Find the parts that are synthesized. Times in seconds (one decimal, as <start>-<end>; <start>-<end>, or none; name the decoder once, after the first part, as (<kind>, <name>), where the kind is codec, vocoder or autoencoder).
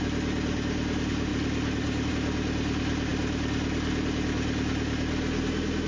none